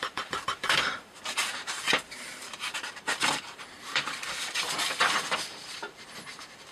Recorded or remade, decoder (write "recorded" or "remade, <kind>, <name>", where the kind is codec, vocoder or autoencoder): remade, vocoder, BigVGAN v2